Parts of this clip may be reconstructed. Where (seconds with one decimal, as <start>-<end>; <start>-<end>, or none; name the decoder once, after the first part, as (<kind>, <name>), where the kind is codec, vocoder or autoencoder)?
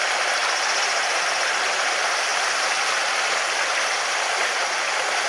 none